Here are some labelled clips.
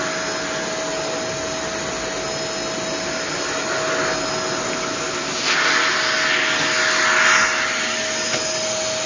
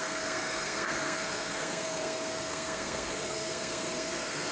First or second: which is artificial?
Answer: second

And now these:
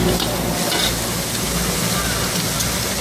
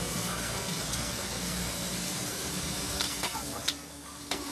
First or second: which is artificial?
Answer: second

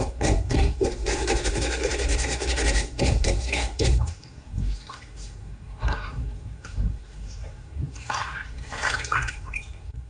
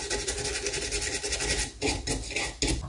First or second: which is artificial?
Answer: first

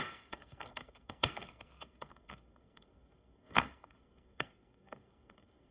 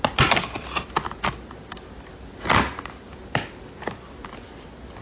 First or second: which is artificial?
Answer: first